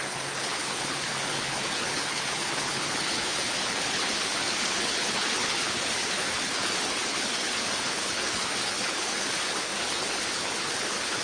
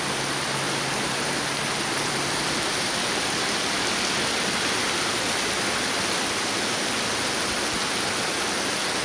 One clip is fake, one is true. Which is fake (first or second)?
first